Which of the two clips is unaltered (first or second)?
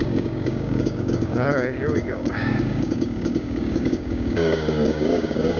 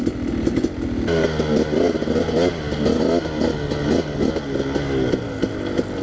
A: second